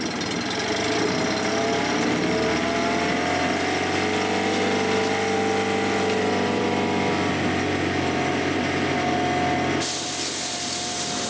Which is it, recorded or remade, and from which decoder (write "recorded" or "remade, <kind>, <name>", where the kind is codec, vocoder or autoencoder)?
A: recorded